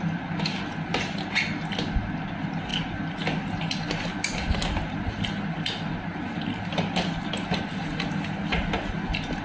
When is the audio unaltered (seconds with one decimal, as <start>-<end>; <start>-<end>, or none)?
0.0-9.4